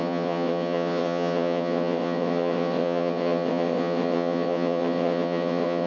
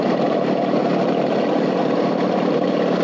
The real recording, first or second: second